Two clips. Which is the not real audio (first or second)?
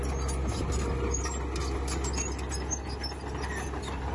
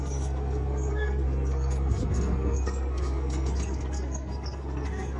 second